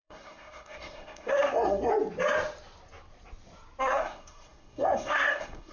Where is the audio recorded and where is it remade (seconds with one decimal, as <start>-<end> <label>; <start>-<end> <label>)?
0.0-1.9 remade; 1.9-3.8 recorded; 3.8-5.7 remade